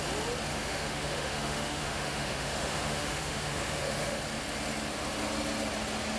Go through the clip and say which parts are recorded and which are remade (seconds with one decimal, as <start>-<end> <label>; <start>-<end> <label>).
0.0-0.5 recorded; 0.5-4.2 remade; 4.2-6.2 recorded